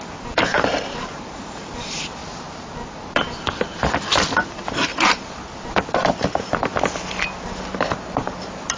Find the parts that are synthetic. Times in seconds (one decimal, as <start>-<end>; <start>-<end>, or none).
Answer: 0.0-2.2; 4.5-6.7; 7.6-8.8